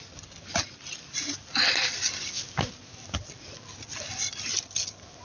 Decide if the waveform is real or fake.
real